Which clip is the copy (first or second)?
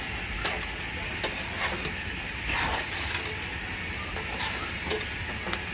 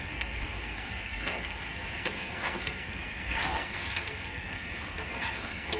second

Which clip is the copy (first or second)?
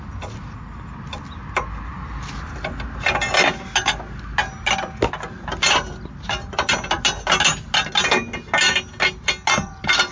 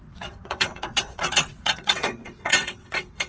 second